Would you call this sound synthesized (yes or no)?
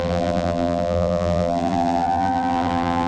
yes